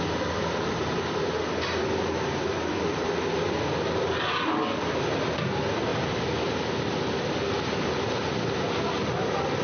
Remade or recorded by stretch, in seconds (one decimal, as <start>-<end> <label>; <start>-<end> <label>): 0.0-9.6 recorded